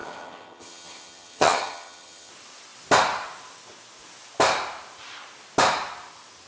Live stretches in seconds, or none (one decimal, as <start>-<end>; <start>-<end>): 2.3-6.5